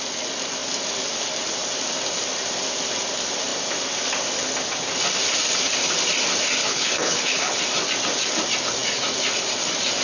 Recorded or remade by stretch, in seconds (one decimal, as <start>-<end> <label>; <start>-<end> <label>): 0.0-6.6 recorded; 6.6-7.6 remade; 7.6-10.0 recorded